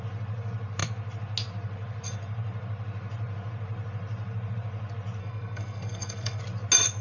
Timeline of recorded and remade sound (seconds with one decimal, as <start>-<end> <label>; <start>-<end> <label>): 0.0-5.2 recorded; 5.2-6.4 remade; 6.4-7.0 recorded